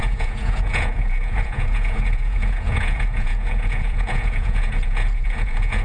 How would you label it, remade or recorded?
remade